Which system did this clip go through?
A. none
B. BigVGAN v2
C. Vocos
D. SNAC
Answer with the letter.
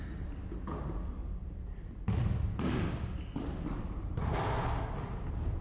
A